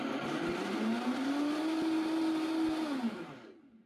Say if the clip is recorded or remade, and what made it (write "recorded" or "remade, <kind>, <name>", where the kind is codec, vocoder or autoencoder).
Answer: recorded